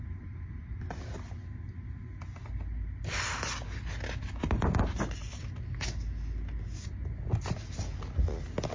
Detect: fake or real real